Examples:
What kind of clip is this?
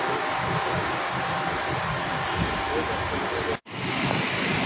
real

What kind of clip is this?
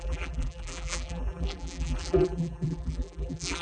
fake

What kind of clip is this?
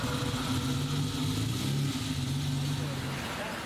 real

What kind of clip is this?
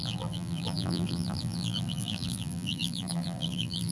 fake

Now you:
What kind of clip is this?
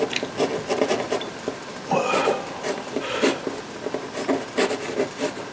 real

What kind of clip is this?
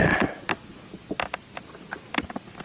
real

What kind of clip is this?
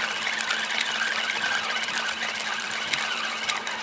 fake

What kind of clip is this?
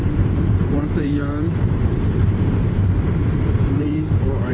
fake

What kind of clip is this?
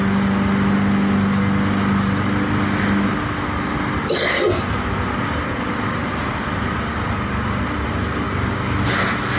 real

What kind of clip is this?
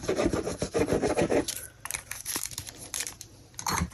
fake